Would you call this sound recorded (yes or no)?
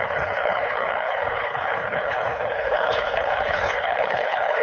no